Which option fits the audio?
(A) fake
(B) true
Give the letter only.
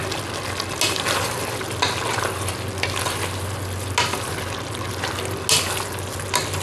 B